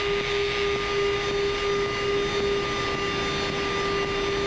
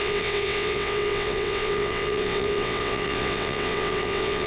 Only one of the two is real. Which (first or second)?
first